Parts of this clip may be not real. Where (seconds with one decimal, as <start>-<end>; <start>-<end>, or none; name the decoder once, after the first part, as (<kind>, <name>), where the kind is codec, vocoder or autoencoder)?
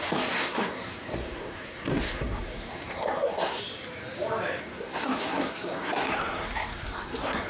0.0-3.6 (codec, SNAC); 4.6-7.5